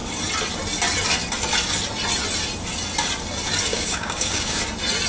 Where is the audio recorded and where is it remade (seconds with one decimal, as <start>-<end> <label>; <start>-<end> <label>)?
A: 0.0-3.7 recorded; 3.7-4.6 remade; 4.6-5.1 recorded